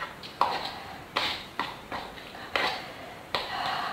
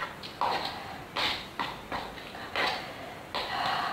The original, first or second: second